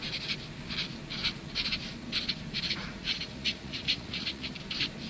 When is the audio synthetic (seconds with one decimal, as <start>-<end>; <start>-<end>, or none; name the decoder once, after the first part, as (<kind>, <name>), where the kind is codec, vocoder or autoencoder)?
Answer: 2.8-4.5 (vocoder, Vocos)